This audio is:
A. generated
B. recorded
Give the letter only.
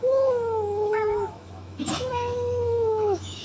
A